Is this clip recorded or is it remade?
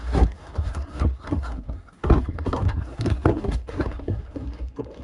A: remade